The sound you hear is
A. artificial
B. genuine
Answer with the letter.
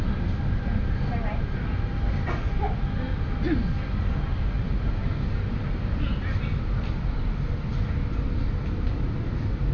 B